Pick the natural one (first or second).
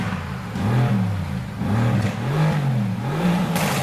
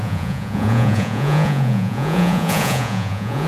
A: first